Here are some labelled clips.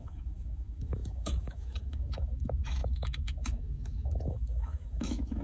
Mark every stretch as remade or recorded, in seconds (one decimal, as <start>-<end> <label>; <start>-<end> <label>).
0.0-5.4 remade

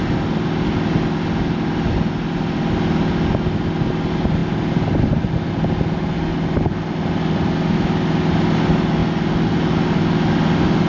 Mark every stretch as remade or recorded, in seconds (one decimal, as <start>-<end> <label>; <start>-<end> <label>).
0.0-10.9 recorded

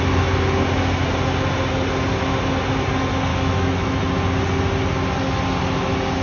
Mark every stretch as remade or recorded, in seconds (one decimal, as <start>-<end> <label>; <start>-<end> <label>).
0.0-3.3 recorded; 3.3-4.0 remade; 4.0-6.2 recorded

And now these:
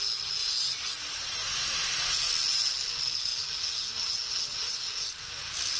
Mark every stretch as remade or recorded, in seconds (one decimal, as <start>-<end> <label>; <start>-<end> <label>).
0.0-5.8 recorded